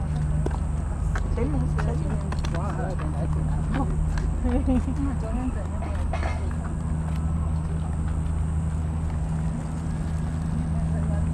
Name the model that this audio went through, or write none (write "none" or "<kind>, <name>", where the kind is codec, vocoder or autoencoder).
none